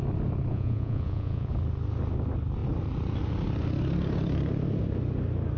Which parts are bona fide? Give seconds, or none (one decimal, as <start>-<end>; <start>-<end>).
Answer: 0.0-0.5; 1.5-5.6